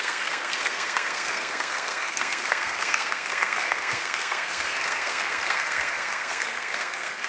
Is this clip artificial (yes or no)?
yes